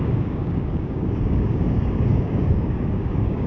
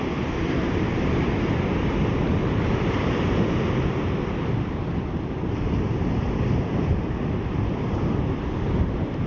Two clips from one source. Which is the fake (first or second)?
first